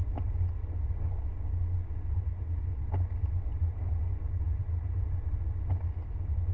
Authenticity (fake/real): real